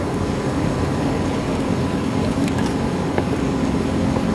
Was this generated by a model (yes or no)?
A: yes